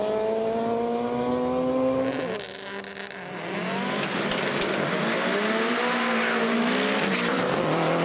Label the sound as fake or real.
real